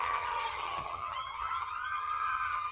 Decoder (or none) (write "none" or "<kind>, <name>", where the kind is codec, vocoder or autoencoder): vocoder, HiFi-GAN